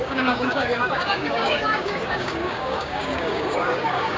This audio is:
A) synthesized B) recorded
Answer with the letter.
A